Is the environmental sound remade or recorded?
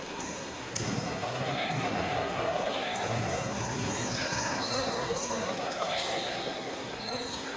remade